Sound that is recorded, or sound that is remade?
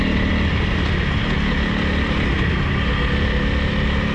recorded